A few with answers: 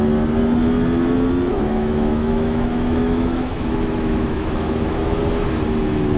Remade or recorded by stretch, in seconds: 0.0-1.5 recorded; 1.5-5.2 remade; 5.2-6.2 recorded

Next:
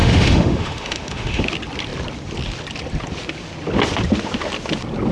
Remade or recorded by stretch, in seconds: 0.0-1.4 remade; 1.4-5.1 recorded

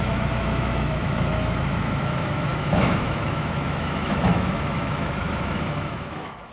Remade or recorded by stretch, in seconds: 0.0-6.5 remade

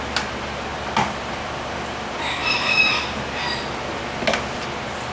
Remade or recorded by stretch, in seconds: 0.0-2.4 recorded; 2.4-3.0 remade; 3.0-5.1 recorded